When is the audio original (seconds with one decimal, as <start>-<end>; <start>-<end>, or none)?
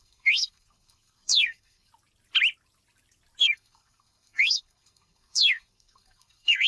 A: 1.9-3.4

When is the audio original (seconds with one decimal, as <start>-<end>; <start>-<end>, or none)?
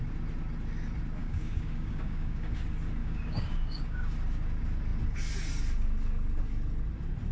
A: 0.0-1.2; 2.6-3.0; 4.0-7.3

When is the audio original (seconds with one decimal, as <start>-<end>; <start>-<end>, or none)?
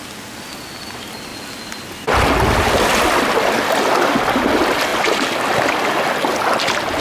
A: 0.0-7.0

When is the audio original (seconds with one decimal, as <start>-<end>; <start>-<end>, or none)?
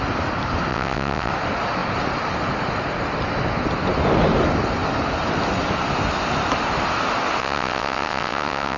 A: 0.0-0.7; 1.3-7.4